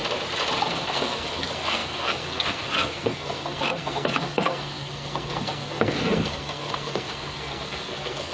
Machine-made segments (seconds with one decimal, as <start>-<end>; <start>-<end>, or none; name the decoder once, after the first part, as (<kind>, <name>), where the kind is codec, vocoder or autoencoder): 0.6-8.3 (codec, SNAC)